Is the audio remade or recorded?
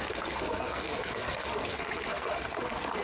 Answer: remade